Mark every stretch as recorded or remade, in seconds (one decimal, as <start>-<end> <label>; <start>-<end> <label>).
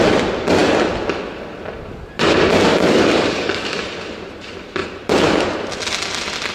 0.0-2.7 recorded; 2.7-3.8 remade; 3.8-6.5 recorded